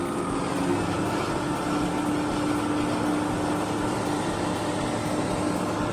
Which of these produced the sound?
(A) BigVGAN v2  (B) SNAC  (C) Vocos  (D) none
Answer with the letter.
D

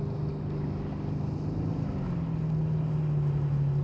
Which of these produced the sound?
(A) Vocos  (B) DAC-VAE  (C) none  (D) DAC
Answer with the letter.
C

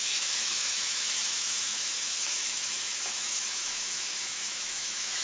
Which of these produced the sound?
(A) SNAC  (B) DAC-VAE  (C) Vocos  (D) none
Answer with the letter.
B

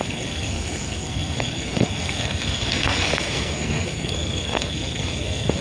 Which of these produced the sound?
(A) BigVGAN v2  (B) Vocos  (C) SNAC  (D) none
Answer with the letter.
C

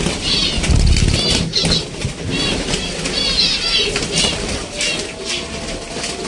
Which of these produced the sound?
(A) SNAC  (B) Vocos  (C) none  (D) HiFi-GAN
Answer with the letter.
C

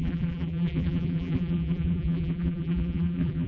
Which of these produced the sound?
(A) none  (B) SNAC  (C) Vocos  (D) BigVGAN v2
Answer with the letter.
D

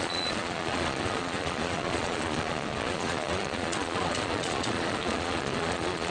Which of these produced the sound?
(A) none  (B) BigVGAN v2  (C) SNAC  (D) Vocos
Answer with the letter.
D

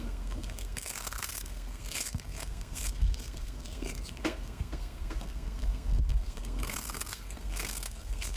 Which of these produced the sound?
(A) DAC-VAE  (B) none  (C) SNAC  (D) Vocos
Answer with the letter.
C